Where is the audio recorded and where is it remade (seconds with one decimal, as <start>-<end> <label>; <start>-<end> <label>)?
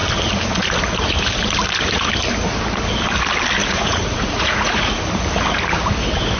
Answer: 0.0-3.6 recorded; 3.6-5.0 remade; 5.0-6.4 recorded